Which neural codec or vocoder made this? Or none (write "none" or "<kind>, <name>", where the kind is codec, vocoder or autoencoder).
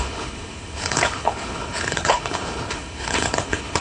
codec, HILCodec